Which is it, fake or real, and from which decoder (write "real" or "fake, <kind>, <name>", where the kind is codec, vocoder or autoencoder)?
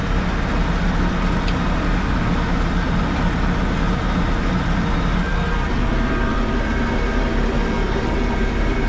real